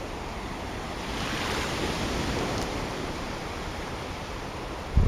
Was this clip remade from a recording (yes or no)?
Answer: no